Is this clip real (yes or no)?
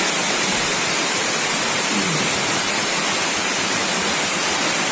yes